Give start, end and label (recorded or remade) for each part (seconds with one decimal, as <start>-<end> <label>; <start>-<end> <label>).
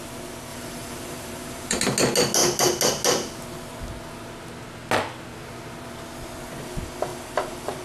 0.0-0.5 recorded; 0.5-1.8 remade; 1.8-7.1 recorded; 7.1-7.8 remade